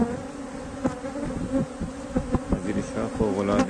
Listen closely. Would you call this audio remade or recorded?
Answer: recorded